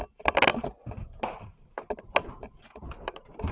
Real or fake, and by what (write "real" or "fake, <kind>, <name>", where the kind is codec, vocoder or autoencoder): real